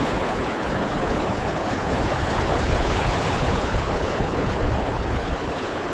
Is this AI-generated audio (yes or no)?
yes